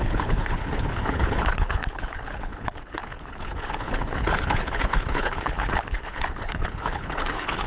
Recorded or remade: remade